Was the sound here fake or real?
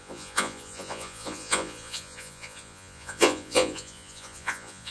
fake